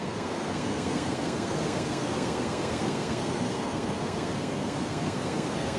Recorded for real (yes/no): no